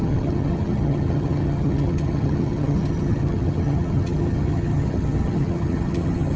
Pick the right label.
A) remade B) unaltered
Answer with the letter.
A